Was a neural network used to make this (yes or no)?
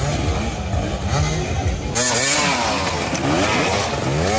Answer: no